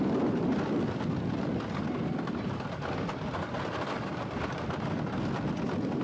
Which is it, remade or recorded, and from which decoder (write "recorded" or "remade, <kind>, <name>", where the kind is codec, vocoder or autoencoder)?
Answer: recorded